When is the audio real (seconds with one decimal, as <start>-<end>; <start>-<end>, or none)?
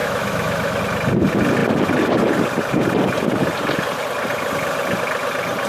0.8-5.7